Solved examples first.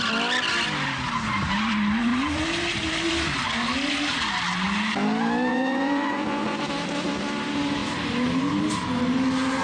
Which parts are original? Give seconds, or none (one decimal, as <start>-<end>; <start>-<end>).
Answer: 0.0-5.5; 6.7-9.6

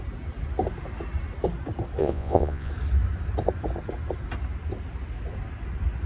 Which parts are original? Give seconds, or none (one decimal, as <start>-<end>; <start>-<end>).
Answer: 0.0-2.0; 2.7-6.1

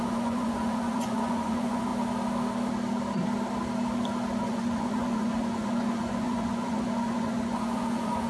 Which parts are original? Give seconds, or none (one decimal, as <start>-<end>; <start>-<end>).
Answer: 1.9-4.4